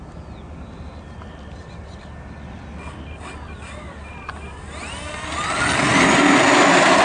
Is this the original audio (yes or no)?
yes